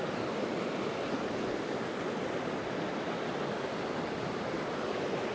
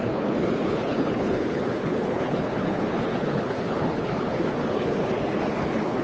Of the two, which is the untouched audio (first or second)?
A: first